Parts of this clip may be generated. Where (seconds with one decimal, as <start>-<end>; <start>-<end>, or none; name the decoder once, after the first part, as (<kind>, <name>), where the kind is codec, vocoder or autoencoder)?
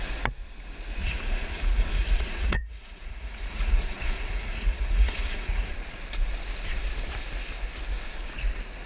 1.0-5.7 (vocoder, Vocos)